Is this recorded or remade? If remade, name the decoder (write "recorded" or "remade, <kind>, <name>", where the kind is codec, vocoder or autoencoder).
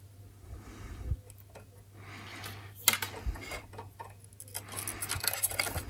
recorded